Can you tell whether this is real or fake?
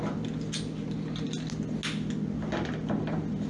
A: real